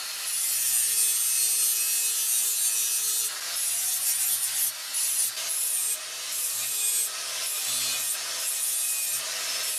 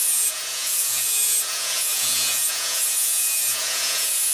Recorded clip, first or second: first